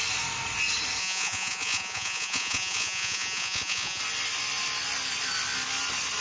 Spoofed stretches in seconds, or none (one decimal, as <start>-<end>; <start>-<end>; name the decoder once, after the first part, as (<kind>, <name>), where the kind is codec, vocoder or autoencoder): 1.0-4.0 (vocoder, Vocos)